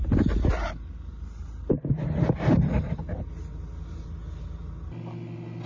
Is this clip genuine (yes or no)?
yes